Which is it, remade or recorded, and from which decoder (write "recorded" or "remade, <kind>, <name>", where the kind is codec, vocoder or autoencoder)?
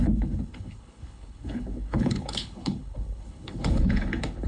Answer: remade, codec, HILCodec